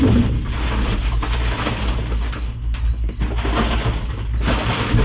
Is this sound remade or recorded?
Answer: recorded